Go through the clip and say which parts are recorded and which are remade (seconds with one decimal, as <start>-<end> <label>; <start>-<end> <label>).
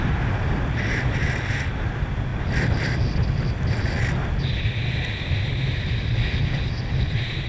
0.0-7.5 recorded